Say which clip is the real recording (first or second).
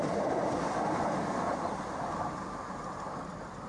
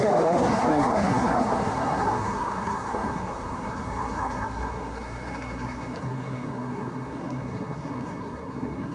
first